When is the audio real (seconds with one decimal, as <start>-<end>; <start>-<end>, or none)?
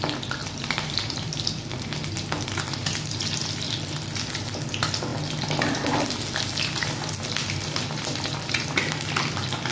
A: 0.0-0.4; 1.4-9.7